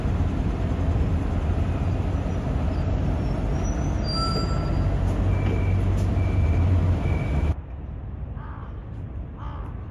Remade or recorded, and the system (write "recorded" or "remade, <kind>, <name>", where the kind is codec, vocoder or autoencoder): recorded